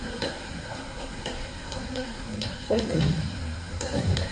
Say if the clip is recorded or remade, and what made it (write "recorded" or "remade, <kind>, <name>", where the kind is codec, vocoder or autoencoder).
remade, codec, SNAC